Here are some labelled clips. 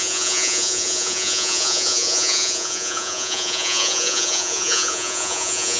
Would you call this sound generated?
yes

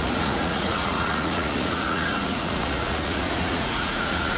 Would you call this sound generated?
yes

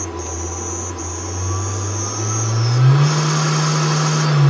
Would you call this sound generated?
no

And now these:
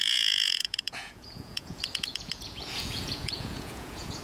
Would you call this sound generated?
yes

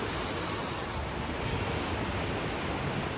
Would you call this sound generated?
no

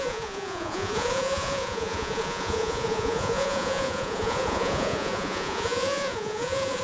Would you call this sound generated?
yes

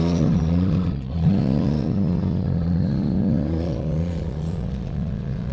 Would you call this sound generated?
yes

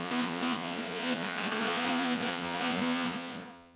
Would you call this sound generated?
yes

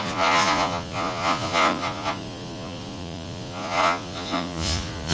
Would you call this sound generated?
yes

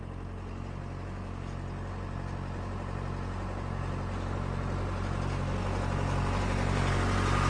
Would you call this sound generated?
no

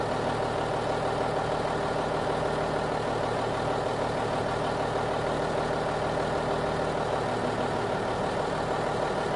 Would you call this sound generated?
no